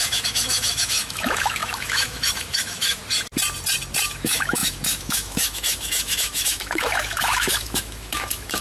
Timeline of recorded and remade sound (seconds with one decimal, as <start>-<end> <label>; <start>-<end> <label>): 0.0-3.0 remade; 3.0-4.1 recorded; 4.1-8.6 remade